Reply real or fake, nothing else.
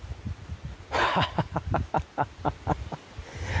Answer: real